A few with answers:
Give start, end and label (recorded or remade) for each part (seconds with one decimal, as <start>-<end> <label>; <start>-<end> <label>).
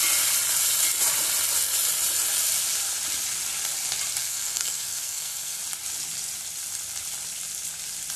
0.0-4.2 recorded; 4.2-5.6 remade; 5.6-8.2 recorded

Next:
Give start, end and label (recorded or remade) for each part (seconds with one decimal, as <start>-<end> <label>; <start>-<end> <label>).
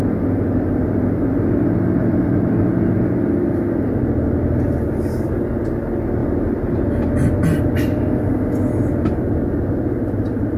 0.0-2.0 recorded; 2.0-2.5 remade; 2.5-6.2 recorded; 6.2-6.8 remade; 6.8-10.6 recorded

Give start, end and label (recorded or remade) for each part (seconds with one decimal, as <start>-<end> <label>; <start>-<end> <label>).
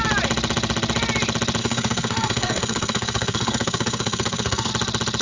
0.0-1.6 recorded; 1.6-4.7 remade; 4.7-5.2 recorded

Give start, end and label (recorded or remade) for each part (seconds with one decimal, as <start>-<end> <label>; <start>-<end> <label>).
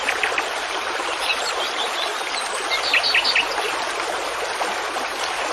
0.0-2.1 remade; 2.1-5.5 recorded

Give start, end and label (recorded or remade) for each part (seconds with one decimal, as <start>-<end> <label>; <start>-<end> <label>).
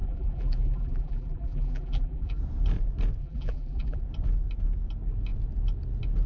0.0-2.4 remade; 2.4-3.2 recorded; 3.2-4.0 remade; 4.0-6.3 recorded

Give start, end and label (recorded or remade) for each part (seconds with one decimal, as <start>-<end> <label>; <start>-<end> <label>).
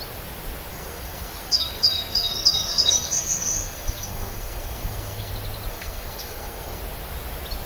0.0-0.7 recorded; 0.7-5.3 remade; 5.3-5.7 recorded; 5.7-6.8 remade; 6.8-7.7 recorded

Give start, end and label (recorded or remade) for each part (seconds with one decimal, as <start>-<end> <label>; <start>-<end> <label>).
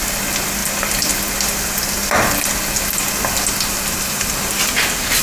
0.0-5.2 recorded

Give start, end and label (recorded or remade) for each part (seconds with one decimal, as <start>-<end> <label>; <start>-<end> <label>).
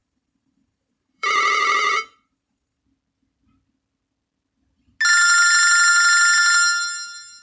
0.0-2.8 remade; 2.8-7.4 recorded